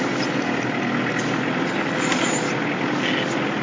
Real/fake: real